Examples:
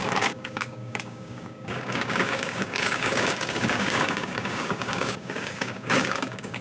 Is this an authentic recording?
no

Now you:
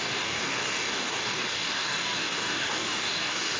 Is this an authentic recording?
no